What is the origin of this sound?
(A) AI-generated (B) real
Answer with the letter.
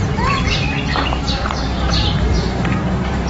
A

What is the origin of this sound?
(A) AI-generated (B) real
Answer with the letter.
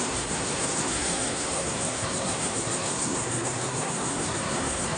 A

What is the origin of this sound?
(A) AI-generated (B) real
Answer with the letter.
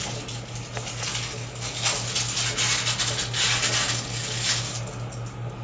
B